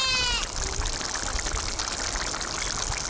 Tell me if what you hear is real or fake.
real